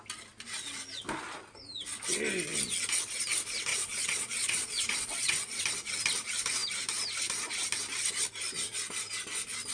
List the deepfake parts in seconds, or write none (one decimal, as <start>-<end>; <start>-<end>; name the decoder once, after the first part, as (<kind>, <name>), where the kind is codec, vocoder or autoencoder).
3.7-5.6 (vocoder, Vocos)

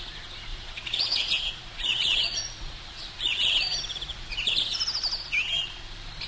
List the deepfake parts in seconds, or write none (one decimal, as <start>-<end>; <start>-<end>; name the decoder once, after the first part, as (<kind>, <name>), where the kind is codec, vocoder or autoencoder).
0.5-3.5 (vocoder, Vocos); 3.9-4.8